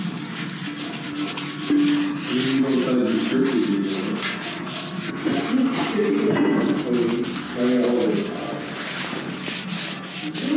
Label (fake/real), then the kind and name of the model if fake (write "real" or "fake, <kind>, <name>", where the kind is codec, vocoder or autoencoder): real